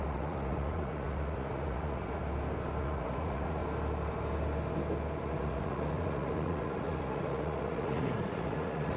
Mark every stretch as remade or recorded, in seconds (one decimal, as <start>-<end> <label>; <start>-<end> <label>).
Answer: 0.0-2.2 remade; 2.2-2.8 recorded; 2.8-3.6 remade; 3.6-5.2 recorded; 5.2-9.0 remade